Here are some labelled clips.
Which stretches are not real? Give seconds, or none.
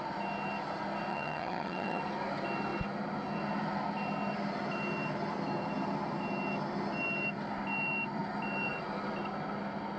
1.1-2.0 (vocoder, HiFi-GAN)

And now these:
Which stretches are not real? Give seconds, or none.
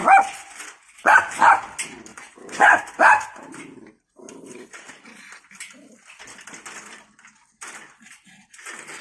0.0-1.5 (vocoder, Vocos); 2.1-2.8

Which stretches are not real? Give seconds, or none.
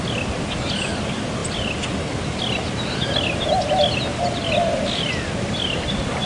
none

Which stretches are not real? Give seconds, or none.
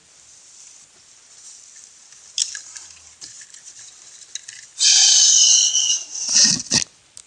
none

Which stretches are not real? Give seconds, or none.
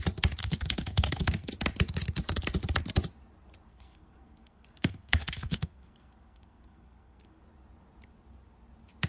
0.4-1.5 (codec, SNAC); 3.7-7.4